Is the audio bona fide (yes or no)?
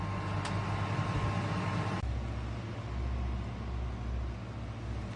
yes